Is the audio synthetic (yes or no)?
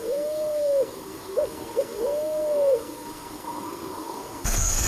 yes